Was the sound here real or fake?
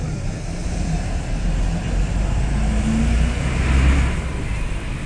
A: real